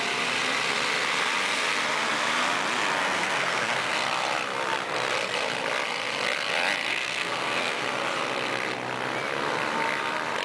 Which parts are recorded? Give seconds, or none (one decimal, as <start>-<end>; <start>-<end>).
0.0-3.0; 3.9-6.9; 7.8-10.4